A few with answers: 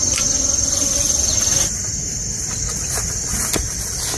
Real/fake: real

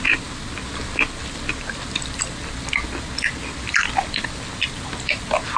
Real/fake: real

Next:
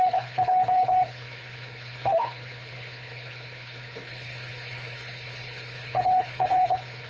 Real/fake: fake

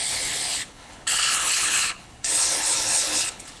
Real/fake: fake